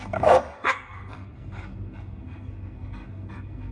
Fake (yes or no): yes